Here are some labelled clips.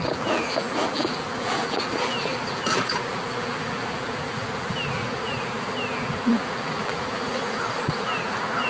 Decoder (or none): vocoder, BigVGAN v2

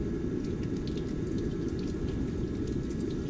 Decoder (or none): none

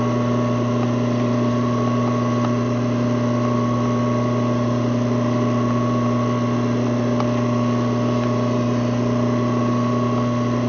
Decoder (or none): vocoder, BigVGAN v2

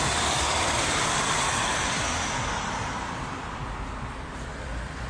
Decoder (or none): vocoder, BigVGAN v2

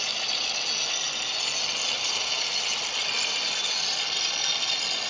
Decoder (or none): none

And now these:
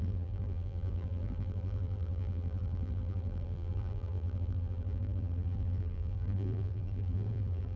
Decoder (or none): vocoder, BigVGAN v2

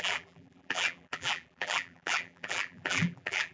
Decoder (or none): vocoder, BigVGAN v2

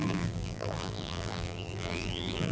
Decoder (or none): vocoder, BigVGAN v2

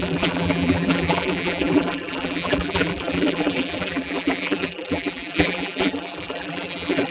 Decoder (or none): vocoder, BigVGAN v2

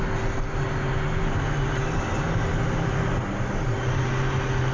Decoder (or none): none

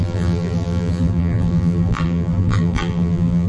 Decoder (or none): vocoder, BigVGAN v2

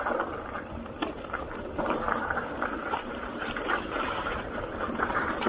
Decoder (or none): vocoder, BigVGAN v2